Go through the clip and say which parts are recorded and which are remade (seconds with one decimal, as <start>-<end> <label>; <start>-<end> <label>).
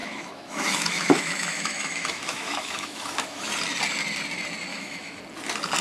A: 0.0-3.5 remade; 3.5-4.7 recorded; 4.7-5.2 remade; 5.2-5.8 recorded